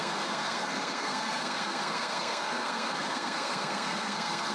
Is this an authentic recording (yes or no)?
no